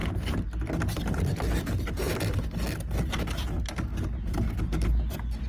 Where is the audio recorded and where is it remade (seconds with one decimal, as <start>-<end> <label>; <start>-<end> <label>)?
0.0-3.1 remade; 3.1-5.5 recorded